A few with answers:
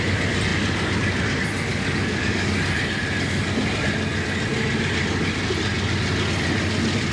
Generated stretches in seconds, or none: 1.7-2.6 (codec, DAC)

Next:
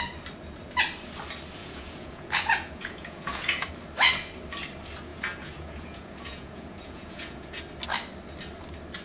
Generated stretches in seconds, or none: 1.6-3.7 (vocoder, Vocos); 5.1-7.6

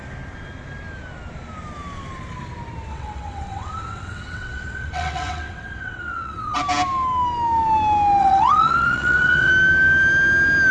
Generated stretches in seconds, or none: 2.9-6.6 (vocoder, WaveNeXt); 8.2-9.5

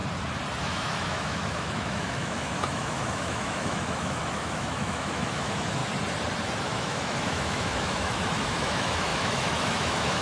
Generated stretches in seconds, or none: 0.6-5.8 (autoencoder, DAC-VAE); 6.6-10.2